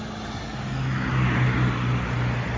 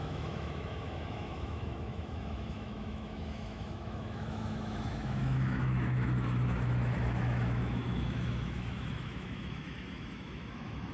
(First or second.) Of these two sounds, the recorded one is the first